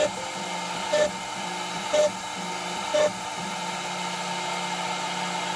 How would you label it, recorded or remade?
recorded